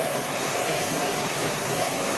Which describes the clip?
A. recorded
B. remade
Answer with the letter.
B